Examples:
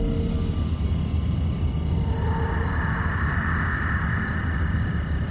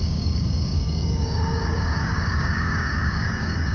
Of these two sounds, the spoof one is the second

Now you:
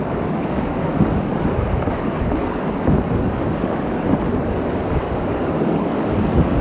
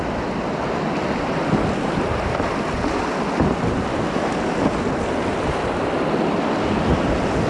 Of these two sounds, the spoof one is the first